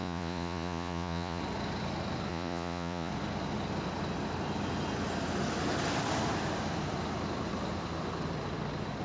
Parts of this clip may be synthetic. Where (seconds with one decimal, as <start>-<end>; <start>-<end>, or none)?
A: 0.0-1.4; 2.3-3.1